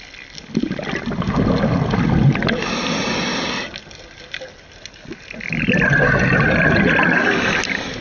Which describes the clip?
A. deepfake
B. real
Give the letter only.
B